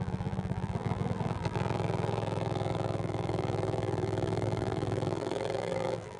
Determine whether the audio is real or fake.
fake